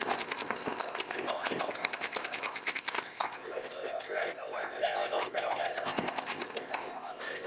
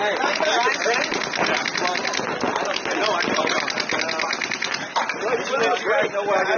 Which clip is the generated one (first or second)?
first